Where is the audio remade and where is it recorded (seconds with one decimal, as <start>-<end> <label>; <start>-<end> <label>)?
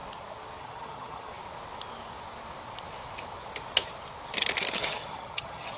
0.0-0.6 recorded; 0.6-1.3 remade; 1.3-4.8 recorded; 4.8-5.8 remade